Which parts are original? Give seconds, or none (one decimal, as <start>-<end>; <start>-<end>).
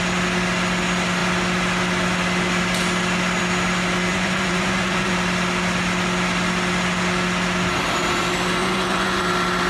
0.0-4.1; 5.1-8.6; 9.2-9.7